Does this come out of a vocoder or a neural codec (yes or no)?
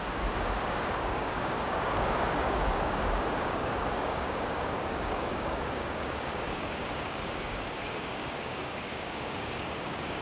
yes